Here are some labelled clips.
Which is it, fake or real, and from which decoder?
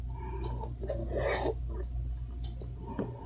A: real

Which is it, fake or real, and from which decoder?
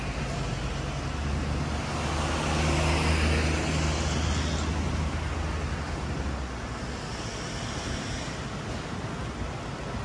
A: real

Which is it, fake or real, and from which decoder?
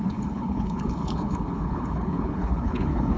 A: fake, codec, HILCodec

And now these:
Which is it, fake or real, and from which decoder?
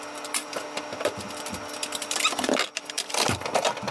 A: fake, vocoder, BigVGAN v2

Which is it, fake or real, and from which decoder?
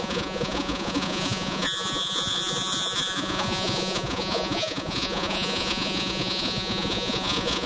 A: fake, vocoder, Vocos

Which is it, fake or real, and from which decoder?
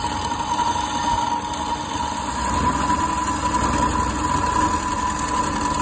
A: real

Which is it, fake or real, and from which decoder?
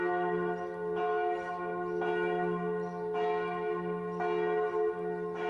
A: real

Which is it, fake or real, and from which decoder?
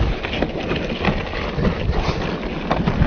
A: real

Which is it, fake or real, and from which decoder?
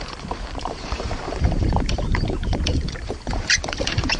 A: fake, vocoder, BigVGAN v2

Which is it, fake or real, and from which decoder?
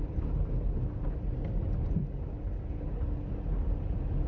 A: real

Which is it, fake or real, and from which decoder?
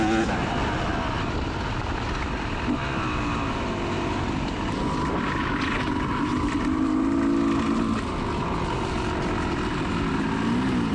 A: real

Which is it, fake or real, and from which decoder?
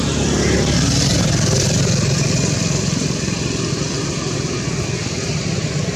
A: fake, vocoder, BigVGAN v2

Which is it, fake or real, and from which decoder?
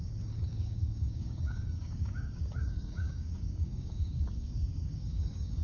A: fake, codec, DAC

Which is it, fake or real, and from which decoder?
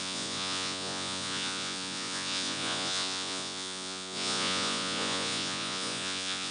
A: fake, vocoder, Vocos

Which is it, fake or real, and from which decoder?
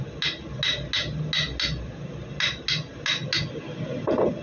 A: real